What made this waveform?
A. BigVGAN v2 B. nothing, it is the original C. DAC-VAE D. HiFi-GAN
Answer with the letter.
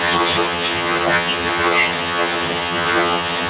D